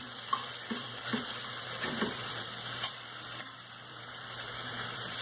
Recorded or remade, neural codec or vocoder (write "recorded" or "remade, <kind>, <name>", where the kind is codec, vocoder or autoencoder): remade, vocoder, BigVGAN v2